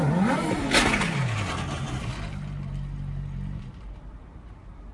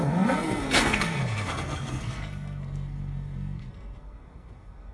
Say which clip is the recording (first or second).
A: first